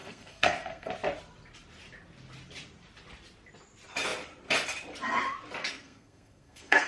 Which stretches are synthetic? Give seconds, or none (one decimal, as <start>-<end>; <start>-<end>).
0.0-0.9; 5.6-6.9